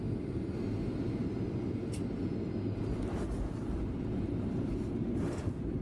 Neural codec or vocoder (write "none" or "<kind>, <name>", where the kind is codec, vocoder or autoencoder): none